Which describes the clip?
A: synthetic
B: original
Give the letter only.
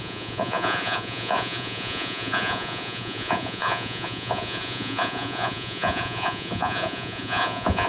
A